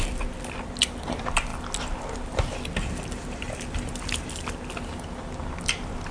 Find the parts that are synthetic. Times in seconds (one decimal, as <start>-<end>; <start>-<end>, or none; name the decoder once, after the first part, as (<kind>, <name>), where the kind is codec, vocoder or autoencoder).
none